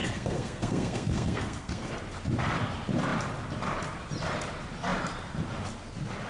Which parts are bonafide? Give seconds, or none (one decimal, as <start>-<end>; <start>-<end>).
1.9-6.3